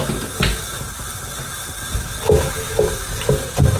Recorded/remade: recorded